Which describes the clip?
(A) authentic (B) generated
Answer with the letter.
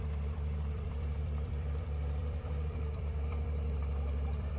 B